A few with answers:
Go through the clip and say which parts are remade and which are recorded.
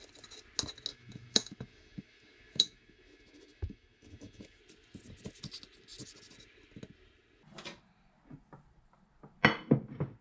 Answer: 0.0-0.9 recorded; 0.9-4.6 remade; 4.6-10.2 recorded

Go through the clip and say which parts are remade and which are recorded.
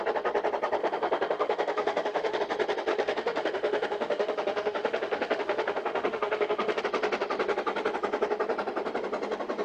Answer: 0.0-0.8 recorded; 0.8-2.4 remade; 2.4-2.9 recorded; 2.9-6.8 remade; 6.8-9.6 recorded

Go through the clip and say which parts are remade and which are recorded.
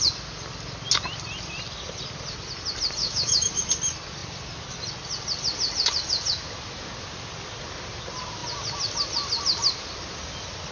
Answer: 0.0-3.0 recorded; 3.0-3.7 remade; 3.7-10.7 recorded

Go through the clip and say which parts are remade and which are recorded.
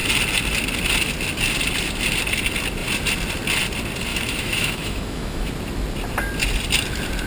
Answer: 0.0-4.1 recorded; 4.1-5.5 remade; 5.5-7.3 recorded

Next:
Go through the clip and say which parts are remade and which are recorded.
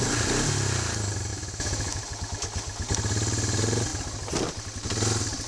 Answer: 0.0-1.3 recorded; 1.3-2.0 remade; 2.0-5.5 recorded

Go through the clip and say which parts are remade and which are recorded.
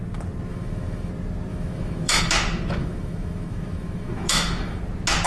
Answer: 0.0-0.5 recorded; 0.5-1.1 remade; 1.1-1.5 recorded; 1.5-2.2 remade; 2.2-2.8 recorded; 2.8-4.8 remade; 4.8-5.3 recorded